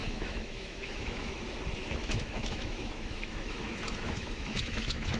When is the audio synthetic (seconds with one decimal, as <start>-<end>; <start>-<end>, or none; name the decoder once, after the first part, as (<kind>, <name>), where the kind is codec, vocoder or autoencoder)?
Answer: 0.0-1.4 (autoencoder, DAC-VAE); 2.0-5.2